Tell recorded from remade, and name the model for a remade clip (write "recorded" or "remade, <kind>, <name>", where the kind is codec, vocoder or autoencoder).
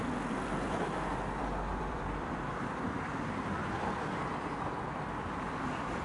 remade, vocoder, BigVGAN v2